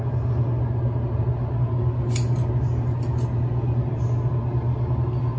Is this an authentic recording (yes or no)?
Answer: yes